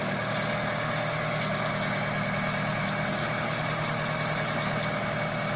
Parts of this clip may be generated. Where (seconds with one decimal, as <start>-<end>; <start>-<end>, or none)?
none